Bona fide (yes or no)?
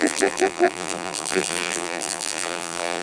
no